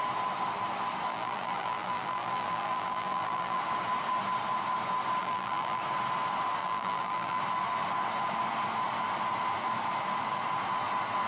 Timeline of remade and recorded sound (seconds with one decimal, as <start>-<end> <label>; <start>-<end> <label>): 0.0-1.1 recorded; 1.1-3.6 remade; 3.6-5.2 recorded; 5.2-5.8 remade; 5.8-6.6 recorded; 6.6-7.4 remade; 7.4-11.3 recorded